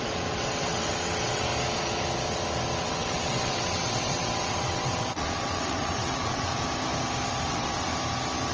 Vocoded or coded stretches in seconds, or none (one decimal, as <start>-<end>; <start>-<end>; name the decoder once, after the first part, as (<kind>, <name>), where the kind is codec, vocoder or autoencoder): 0.0-1.5 (vocoder, WaveNeXt); 2.8-6.5; 7.5-7.9